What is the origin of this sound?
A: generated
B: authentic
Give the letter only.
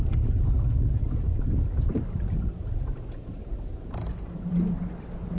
B